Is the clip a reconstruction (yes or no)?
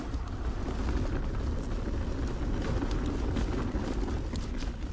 no